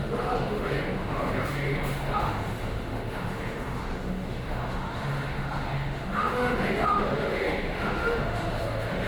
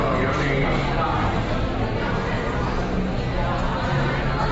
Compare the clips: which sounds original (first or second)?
second